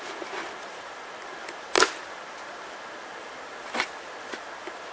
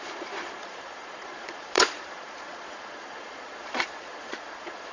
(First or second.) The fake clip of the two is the second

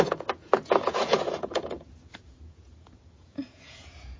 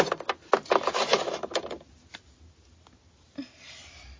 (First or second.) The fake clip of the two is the first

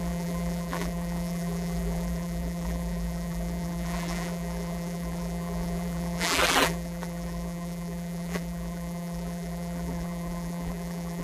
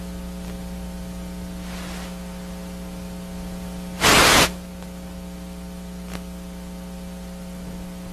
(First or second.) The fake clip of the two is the first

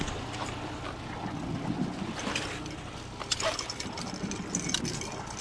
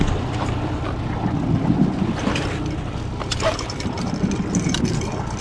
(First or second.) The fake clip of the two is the second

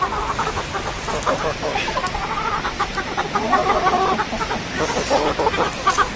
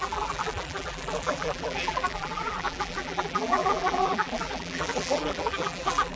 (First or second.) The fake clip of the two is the second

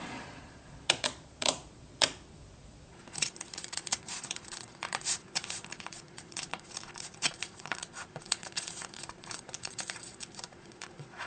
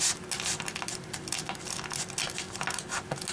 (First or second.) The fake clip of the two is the first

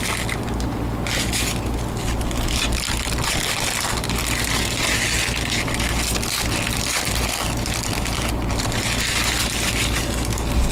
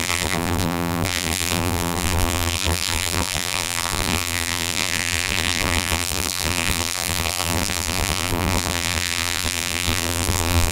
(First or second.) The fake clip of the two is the second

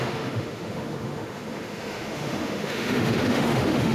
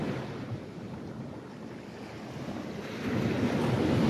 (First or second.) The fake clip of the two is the first